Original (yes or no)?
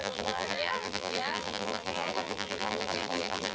no